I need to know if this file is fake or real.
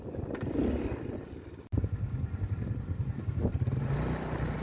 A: real